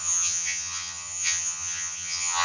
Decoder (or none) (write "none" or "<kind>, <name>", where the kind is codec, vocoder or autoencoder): vocoder, HiFi-GAN